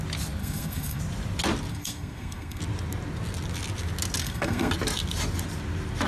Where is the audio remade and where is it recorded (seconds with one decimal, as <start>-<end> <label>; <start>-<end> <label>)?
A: 0.0-0.4 recorded; 0.4-1.0 remade; 1.0-1.7 recorded; 1.7-2.6 remade; 2.6-4.2 recorded; 4.2-4.7 remade; 4.7-6.1 recorded